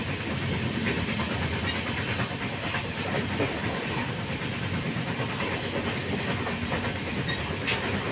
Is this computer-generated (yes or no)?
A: no